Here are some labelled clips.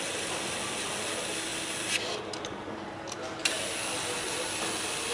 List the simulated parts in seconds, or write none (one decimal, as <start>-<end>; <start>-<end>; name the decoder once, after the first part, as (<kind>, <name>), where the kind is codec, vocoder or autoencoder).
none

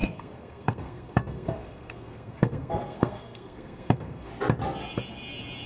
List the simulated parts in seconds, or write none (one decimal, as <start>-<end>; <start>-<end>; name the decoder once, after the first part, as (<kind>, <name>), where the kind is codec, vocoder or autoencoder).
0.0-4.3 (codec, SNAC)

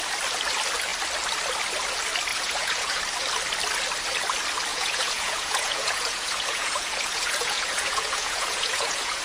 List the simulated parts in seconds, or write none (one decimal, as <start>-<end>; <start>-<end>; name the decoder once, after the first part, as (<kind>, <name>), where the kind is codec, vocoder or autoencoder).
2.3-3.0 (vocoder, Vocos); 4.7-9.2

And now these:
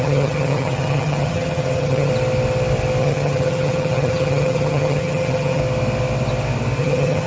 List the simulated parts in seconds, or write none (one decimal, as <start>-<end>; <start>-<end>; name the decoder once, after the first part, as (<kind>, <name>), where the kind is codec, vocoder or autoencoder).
0.0-2.1 (vocoder, HiFi-GAN); 3.0-5.6; 6.8-7.3